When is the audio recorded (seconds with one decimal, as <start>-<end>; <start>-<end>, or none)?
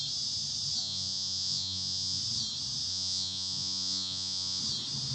0.0-0.8; 2.2-2.9; 4.6-5.1